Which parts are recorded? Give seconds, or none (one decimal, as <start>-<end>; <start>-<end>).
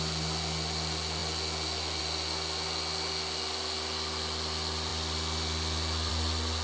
0.0-6.6